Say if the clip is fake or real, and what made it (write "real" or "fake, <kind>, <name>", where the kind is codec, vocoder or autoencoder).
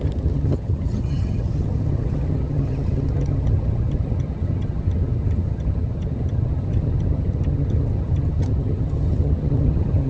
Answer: fake, vocoder, HiFi-GAN